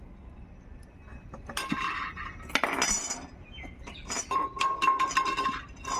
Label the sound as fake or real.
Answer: real